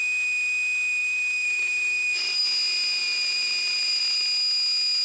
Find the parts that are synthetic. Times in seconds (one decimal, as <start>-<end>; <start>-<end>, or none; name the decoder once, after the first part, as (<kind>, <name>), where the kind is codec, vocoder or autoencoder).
1.0-2.4 (vocoder, BigVGAN v2); 3.0-4.0